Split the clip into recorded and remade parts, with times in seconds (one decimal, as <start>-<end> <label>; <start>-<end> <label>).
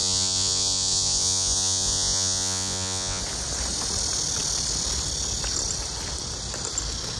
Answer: 0.0-3.2 remade; 3.2-7.2 recorded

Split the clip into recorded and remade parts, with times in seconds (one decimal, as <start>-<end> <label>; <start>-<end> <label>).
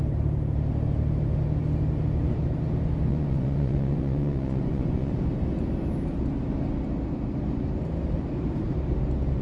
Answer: 0.0-3.1 recorded; 3.1-5.1 remade; 5.1-9.4 recorded